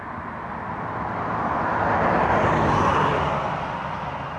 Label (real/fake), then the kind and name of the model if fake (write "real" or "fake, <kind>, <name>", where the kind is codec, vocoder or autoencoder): real